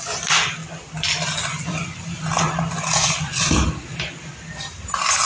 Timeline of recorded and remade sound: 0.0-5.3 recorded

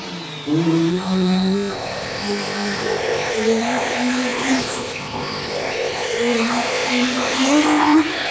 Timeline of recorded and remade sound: 0.0-0.9 recorded; 0.9-8.3 remade

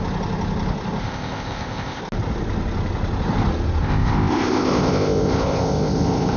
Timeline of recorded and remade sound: 0.0-1.0 recorded; 1.0-2.0 remade; 2.0-3.8 recorded; 3.8-6.4 remade

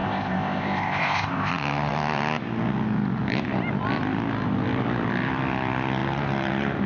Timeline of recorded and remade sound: 0.0-1.5 remade; 1.5-6.9 recorded

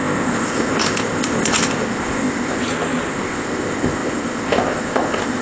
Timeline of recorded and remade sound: 0.0-2.6 remade; 2.6-3.1 recorded; 3.1-5.4 remade

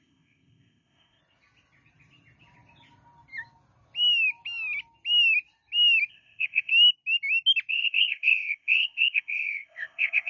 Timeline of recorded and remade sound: 0.0-1.2 remade; 1.2-6.1 recorded; 6.1-6.7 remade; 6.7-7.7 recorded; 7.7-10.3 remade

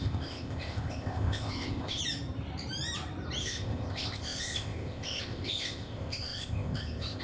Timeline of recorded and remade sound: 0.0-2.0 remade; 2.0-3.4 recorded; 3.4-7.2 remade